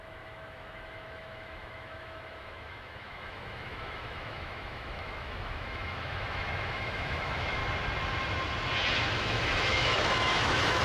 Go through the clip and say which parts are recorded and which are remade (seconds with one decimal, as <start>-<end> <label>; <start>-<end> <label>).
0.0-7.6 remade; 7.6-9.1 recorded; 9.1-10.8 remade